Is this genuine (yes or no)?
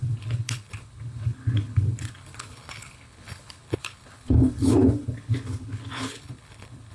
no